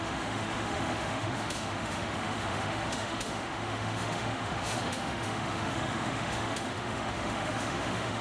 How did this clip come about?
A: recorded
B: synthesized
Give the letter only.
B